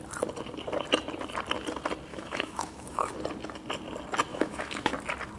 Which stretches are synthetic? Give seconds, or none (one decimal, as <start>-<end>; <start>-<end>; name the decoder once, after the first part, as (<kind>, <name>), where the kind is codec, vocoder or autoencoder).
2.1-3.1 (autoencoder, DAC-VAE); 4.3-4.9